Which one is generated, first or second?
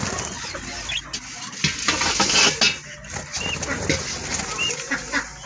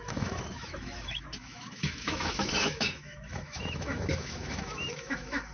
second